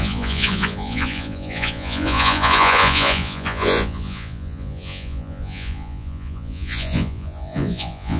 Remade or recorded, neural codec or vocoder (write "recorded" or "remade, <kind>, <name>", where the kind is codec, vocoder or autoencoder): remade, vocoder, Vocos